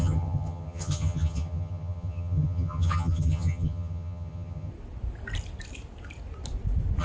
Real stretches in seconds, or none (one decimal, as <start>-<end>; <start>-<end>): 4.7-7.0